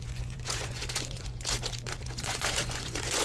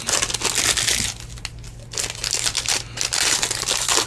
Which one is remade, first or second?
first